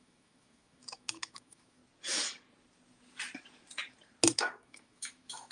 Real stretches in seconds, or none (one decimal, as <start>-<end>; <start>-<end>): 1.8-4.4